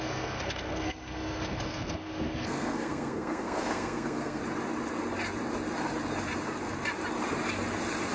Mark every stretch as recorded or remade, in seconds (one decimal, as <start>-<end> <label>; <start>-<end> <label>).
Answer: 0.0-4.4 remade; 4.4-8.1 recorded